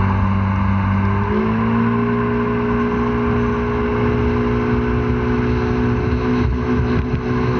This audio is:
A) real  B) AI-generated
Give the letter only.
A